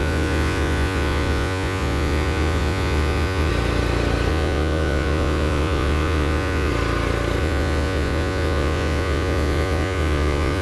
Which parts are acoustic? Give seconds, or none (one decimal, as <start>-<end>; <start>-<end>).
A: 3.5-4.3; 6.7-7.4